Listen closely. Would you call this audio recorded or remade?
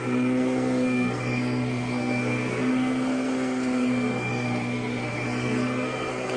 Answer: remade